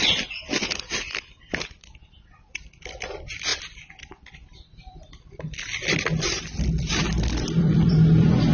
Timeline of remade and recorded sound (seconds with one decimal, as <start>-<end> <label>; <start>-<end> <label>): 0.0-8.5 remade

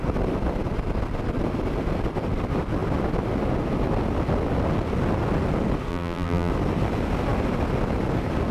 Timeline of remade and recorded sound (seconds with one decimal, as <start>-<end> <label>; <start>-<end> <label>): 0.0-5.9 recorded; 5.9-6.5 remade; 6.5-8.5 recorded